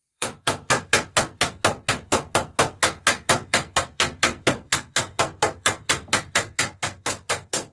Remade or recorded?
remade